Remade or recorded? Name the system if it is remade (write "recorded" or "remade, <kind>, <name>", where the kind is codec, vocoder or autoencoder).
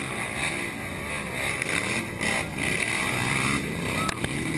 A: recorded